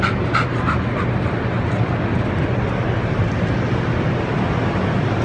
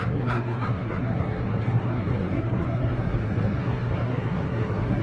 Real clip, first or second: first